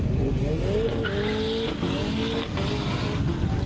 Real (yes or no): yes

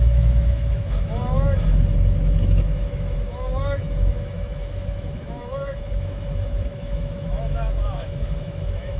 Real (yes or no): no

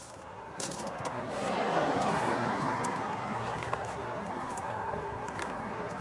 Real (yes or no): no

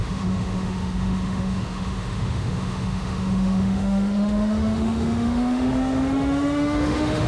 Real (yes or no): no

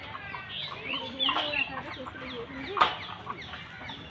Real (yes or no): yes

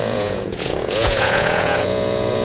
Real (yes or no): no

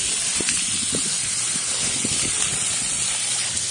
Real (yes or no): yes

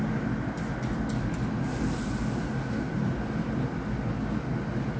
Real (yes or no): yes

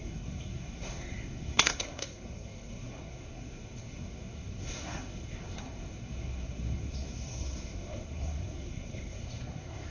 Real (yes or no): no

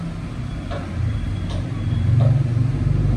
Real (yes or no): yes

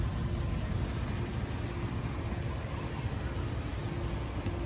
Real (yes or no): yes